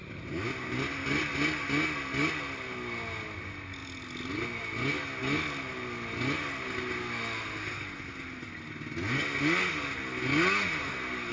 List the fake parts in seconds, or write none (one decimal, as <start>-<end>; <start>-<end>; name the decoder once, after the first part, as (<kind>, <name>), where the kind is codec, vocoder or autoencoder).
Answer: none

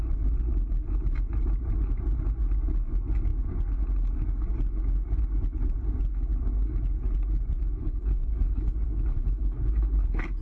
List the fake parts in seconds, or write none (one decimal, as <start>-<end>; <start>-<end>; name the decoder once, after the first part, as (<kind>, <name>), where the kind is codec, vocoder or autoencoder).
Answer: 7.8-10.4 (codec, HILCodec)

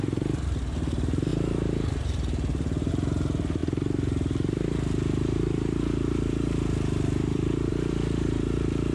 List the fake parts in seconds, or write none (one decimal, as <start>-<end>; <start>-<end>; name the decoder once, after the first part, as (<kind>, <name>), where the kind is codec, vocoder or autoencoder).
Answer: 0.0-8.9 (vocoder, BigVGAN v2)